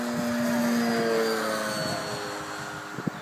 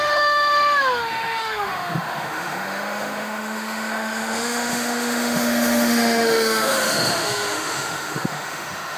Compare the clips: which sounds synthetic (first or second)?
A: second